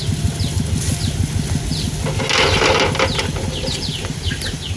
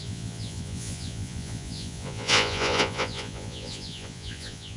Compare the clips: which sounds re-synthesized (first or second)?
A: second